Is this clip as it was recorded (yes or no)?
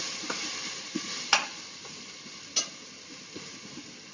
yes